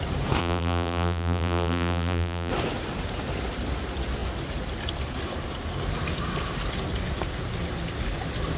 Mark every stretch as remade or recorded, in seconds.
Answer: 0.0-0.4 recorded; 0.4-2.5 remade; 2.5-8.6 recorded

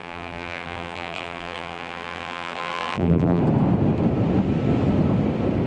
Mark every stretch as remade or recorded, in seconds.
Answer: 0.0-3.4 remade; 3.4-5.7 recorded

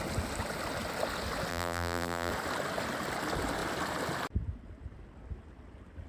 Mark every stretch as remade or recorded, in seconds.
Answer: 0.0-1.5 recorded; 1.5-2.3 remade; 2.3-6.1 recorded

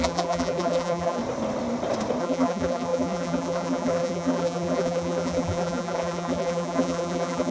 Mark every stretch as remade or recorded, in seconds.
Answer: 0.0-1.2 remade; 1.2-2.2 recorded; 2.2-7.5 remade